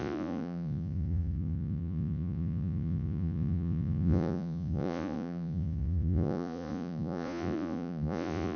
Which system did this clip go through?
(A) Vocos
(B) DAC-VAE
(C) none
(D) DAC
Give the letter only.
A